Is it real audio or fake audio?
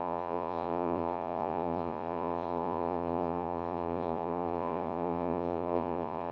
fake